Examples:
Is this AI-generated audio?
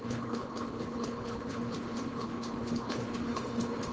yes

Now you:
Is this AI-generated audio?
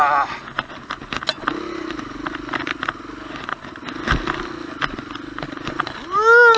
no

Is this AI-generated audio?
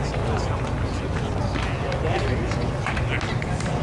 no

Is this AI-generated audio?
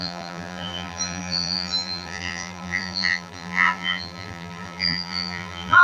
yes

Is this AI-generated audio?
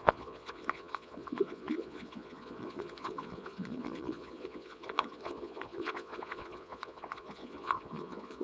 yes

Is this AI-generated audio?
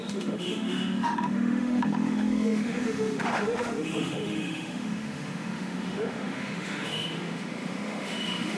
yes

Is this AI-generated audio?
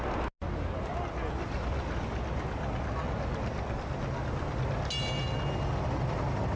no